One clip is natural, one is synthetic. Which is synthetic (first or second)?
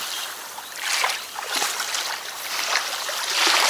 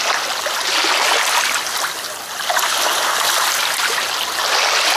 first